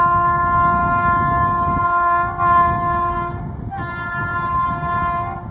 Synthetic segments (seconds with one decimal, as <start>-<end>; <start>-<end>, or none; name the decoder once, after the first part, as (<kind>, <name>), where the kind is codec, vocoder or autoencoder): none